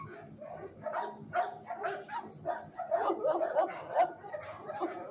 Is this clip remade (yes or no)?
no